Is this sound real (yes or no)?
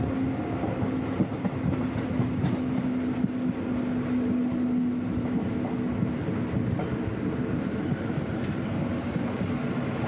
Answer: yes